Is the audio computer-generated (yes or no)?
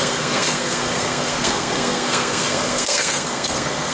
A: yes